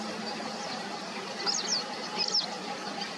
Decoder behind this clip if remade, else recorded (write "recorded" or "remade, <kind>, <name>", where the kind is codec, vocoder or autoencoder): recorded